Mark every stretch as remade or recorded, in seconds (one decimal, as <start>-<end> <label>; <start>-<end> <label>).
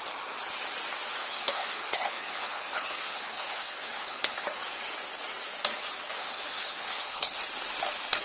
0.0-1.2 recorded; 1.2-4.5 remade; 4.5-6.0 recorded; 6.0-7.4 remade; 7.4-8.2 recorded